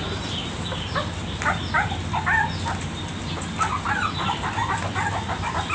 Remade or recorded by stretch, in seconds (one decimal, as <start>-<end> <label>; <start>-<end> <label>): 0.0-5.7 recorded